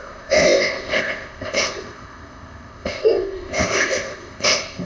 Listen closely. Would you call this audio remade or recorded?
remade